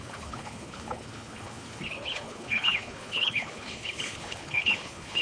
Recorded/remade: remade